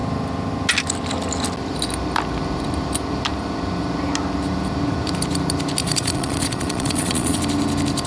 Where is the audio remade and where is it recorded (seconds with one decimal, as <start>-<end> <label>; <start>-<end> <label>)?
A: 0.0-5.8 recorded; 5.8-7.4 remade; 7.4-8.1 recorded